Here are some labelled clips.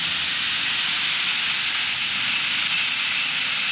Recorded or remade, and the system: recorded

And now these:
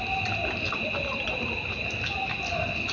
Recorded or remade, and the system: recorded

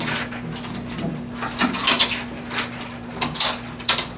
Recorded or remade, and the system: recorded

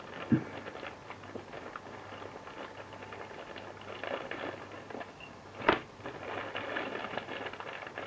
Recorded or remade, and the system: recorded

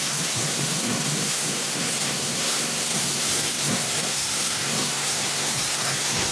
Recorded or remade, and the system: remade, codec, SNAC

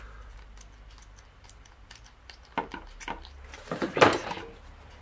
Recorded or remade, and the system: recorded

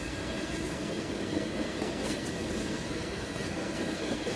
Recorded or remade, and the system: remade, codec, SNAC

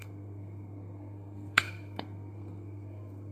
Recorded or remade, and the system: remade, codec, SNAC